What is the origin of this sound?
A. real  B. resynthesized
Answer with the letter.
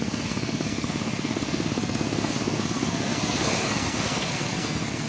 B